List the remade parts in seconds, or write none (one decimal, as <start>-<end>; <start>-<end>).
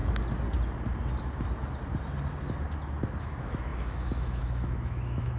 3.2-5.4